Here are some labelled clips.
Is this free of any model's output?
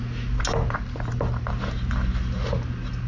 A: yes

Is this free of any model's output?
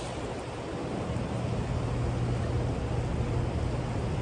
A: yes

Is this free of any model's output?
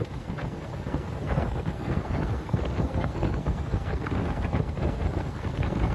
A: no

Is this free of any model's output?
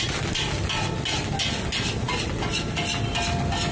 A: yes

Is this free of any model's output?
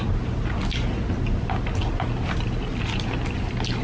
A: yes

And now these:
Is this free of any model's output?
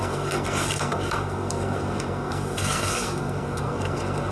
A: no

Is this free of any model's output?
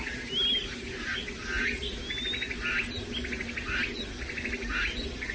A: yes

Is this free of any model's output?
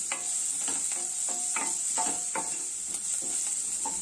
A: yes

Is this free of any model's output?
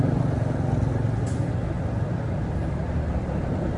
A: yes